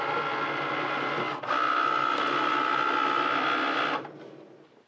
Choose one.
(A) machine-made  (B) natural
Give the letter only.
B